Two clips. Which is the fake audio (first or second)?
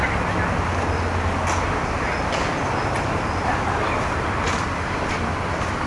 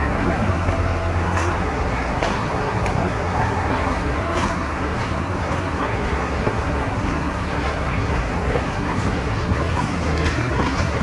second